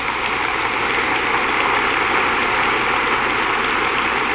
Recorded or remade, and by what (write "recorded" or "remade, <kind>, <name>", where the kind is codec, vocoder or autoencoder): recorded